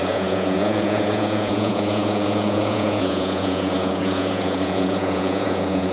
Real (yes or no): no